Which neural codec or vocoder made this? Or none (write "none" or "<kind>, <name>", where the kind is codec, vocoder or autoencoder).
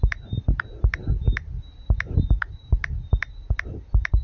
none